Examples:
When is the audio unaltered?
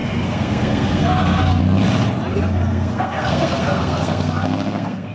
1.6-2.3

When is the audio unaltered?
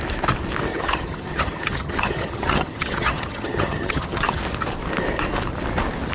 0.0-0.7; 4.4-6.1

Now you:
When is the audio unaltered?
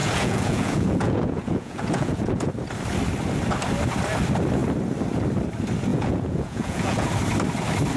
2.5-5.9; 7.1-8.0